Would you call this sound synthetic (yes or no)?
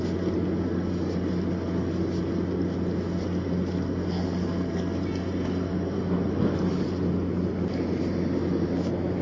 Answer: no